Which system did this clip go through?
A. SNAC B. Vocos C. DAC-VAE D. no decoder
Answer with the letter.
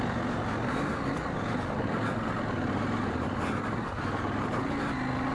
D